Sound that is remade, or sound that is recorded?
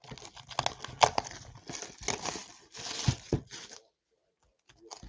recorded